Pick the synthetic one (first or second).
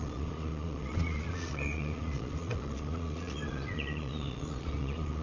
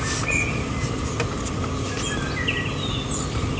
first